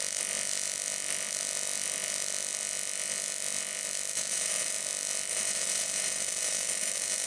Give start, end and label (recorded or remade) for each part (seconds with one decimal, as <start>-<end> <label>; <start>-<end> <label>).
0.0-4.1 recorded; 4.1-4.8 remade; 4.8-5.3 recorded; 5.3-7.3 remade